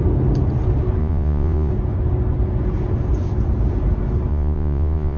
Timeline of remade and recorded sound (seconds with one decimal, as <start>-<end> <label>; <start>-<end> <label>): 0.0-1.0 recorded; 1.0-1.7 remade; 1.7-4.3 recorded; 4.3-5.2 remade